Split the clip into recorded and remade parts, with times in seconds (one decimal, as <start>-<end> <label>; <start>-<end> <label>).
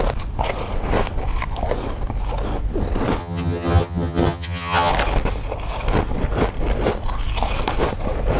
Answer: 0.0-3.2 recorded; 3.2-4.9 remade; 4.9-8.4 recorded